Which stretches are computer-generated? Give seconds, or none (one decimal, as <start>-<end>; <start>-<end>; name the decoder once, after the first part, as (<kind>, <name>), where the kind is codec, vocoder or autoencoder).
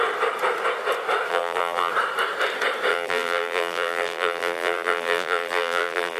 1.3-1.9 (vocoder, BigVGAN v2); 2.9-6.2